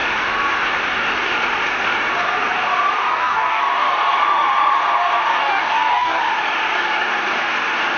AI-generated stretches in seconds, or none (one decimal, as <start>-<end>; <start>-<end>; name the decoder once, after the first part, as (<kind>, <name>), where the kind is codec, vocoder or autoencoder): 3.1-3.6 (codec, DAC); 5.3-6.2